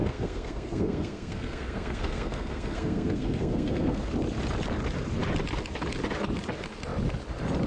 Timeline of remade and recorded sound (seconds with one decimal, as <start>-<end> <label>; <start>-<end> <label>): 0.0-4.1 remade; 4.1-7.7 recorded